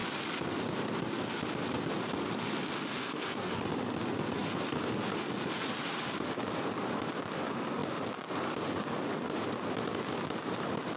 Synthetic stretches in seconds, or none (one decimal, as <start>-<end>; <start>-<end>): 3.0-3.6